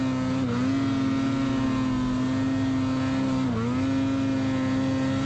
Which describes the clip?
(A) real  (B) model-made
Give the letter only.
A